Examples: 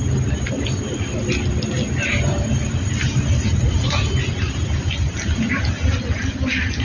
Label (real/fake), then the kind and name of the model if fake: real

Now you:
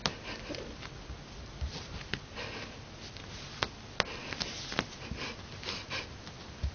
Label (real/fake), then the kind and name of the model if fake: real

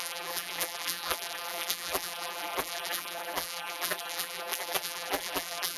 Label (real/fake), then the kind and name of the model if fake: fake, vocoder, BigVGAN v2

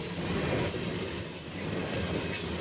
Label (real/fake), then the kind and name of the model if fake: real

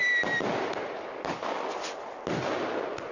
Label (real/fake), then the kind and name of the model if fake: real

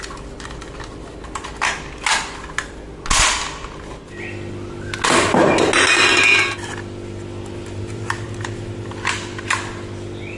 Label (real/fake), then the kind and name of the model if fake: real